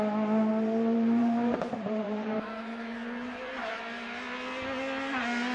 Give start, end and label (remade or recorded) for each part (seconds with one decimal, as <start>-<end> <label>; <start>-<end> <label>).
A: 0.0-0.5 recorded; 0.5-3.8 remade; 3.8-5.5 recorded